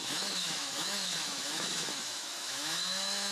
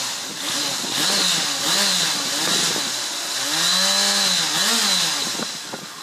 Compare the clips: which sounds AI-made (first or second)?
first